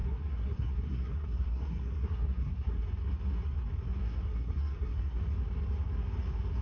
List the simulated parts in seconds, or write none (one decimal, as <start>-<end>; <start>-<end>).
0.0-2.8; 4.0-5.2